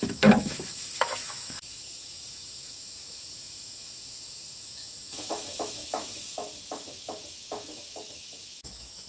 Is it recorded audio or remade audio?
remade